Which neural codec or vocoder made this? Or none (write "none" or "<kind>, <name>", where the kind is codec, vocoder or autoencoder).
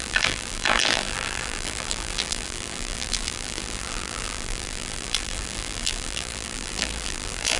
vocoder, BigVGAN v2